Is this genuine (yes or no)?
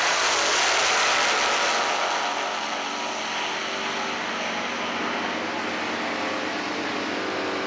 yes